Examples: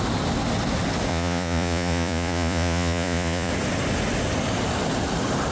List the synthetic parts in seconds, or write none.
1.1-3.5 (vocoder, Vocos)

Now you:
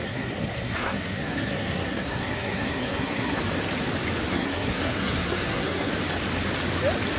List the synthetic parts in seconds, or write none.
0.0-3.4 (codec, SNAC); 4.3-5.9

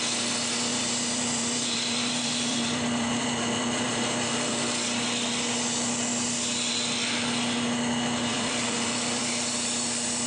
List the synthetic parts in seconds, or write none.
0.7-4.6 (vocoder, BigVGAN v2); 8.3-9.2

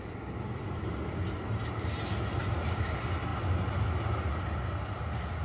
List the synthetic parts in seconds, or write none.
none

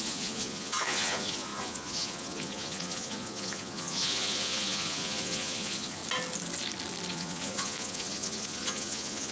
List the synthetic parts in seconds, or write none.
0.0-6.0 (vocoder, Vocos); 7.1-9.3

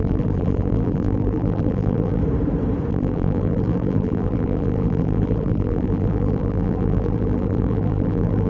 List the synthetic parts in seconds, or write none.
0.0-2.2 (vocoder, BigVGAN v2); 2.9-8.5

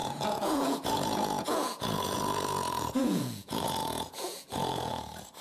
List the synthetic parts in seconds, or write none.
0.0-5.4 (vocoder, Vocos)

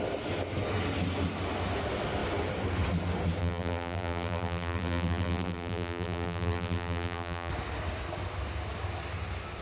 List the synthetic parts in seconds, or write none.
3.4-7.5 (vocoder, BigVGAN v2)